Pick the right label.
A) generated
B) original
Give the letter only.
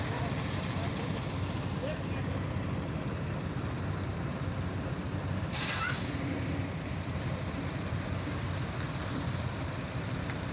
A